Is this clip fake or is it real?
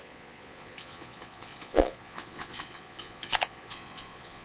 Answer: fake